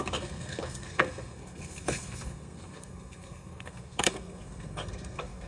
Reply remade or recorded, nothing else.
remade